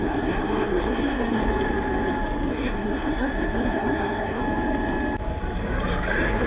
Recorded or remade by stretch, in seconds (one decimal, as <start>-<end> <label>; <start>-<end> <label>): 0.0-1.4 remade; 1.4-2.5 recorded; 2.5-4.4 remade; 4.4-6.1 recorded; 6.1-6.5 remade